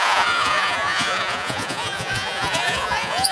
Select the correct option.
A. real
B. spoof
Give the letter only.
B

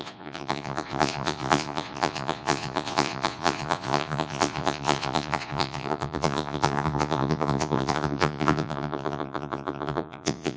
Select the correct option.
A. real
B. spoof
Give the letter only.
B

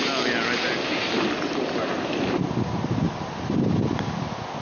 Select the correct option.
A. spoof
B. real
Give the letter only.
B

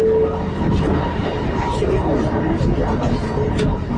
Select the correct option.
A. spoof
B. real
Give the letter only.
B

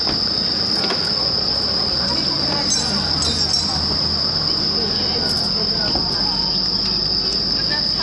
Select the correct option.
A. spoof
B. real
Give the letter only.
B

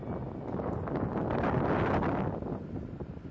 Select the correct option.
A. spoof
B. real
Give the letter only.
B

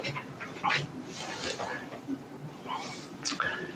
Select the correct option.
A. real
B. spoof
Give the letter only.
B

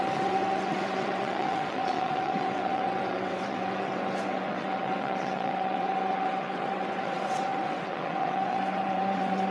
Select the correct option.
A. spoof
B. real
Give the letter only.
A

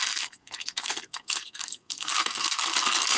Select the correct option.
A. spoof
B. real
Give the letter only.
A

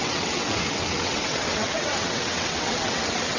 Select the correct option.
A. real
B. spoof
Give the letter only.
B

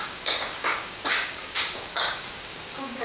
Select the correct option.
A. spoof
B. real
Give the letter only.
A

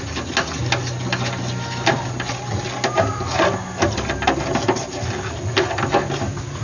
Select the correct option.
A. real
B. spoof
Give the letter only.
A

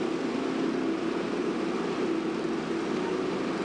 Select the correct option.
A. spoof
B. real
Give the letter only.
B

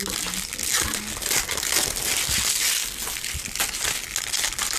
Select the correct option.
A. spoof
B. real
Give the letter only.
B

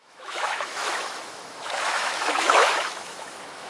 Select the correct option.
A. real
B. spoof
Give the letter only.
B